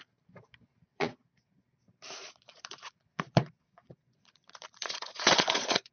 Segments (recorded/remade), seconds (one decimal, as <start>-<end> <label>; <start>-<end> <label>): 0.0-0.9 recorded; 0.9-1.6 remade; 1.6-2.2 recorded; 2.2-5.9 remade

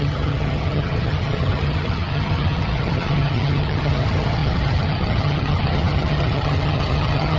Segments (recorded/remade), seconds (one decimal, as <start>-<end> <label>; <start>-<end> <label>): 0.0-7.4 remade

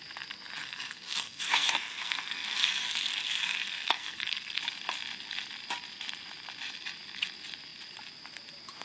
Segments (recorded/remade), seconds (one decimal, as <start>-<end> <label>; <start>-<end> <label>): 0.0-0.6 recorded; 0.6-4.6 remade; 4.6-8.8 recorded